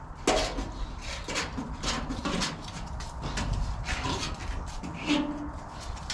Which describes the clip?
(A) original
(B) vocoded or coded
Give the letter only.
A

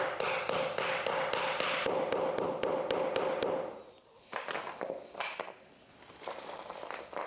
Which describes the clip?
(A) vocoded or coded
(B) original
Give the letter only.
B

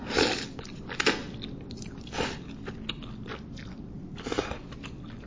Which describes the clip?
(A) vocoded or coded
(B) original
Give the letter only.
B